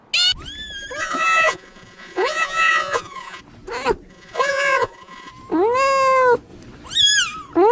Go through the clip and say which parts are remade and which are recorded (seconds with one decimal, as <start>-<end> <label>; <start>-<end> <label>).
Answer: 0.0-1.0 recorded; 1.0-3.4 remade; 3.4-4.1 recorded; 4.1-5.3 remade; 5.3-7.7 recorded